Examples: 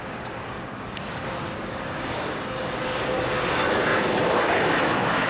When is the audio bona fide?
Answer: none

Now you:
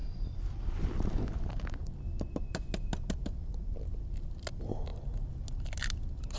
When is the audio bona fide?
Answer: 2.3-6.4

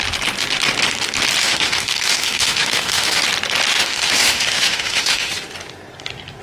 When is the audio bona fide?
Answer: 0.0-1.4; 3.2-3.7; 5.3-6.4